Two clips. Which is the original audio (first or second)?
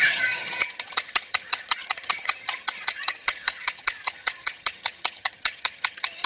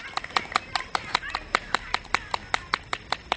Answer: second